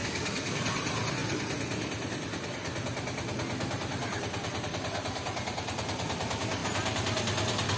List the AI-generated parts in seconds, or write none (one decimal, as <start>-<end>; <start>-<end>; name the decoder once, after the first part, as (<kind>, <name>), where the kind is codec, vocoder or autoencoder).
0.0-0.6 (codec, DAC)